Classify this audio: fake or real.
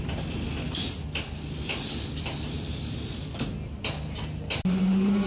real